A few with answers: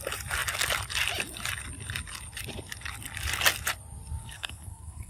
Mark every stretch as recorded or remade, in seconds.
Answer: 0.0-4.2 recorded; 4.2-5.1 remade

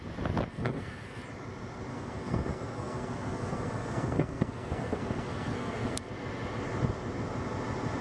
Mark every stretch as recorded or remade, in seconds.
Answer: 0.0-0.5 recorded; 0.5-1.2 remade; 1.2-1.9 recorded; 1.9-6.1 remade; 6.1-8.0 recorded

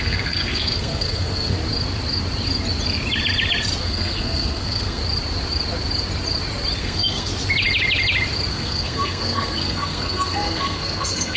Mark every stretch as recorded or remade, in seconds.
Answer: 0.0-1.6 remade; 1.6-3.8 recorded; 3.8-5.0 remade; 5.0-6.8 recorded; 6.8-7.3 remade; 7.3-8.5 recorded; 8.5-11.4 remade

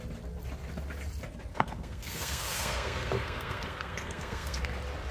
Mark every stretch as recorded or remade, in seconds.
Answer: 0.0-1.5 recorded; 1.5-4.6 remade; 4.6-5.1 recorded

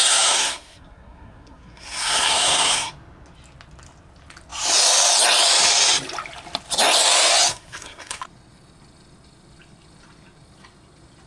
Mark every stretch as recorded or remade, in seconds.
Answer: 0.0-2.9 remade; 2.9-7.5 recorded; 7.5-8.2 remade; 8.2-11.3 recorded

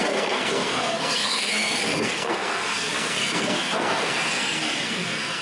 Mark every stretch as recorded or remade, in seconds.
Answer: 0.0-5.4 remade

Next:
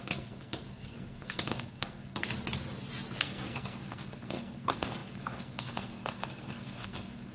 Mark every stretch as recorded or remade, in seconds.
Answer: 0.0-2.3 remade; 2.3-3.2 recorded; 3.2-7.3 remade